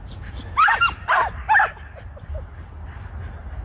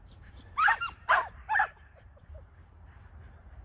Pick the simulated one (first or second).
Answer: second